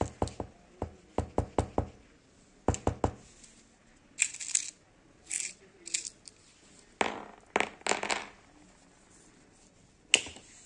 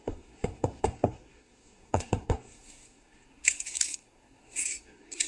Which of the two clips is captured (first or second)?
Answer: first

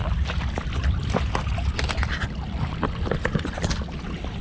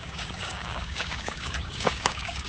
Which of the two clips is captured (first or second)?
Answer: first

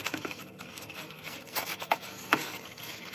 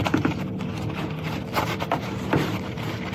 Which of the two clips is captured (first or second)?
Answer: second